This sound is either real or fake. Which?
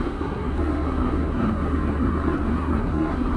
fake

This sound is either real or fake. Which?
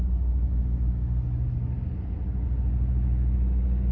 real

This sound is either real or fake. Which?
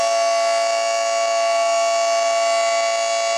real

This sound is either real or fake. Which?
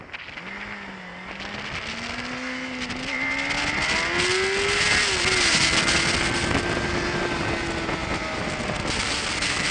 real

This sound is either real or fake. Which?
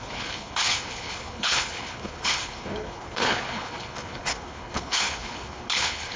fake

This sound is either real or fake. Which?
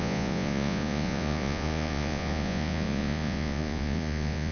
fake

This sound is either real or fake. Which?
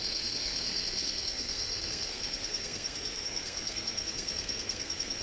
fake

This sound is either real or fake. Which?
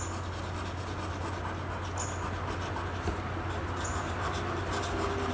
real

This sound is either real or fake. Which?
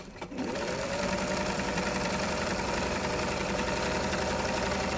fake